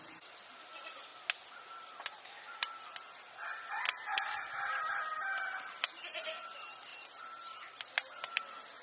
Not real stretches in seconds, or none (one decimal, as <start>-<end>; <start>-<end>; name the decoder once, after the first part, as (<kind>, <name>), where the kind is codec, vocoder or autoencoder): none